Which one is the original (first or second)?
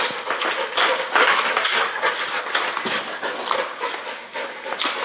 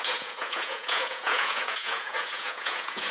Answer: first